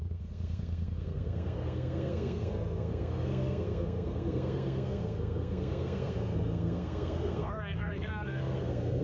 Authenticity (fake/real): fake